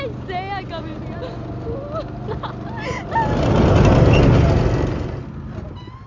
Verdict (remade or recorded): recorded